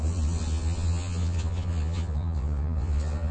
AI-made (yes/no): yes